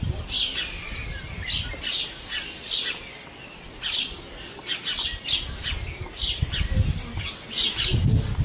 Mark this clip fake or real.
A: real